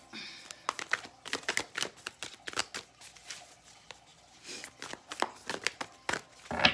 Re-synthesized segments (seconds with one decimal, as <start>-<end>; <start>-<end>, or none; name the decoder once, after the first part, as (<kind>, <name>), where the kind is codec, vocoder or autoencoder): none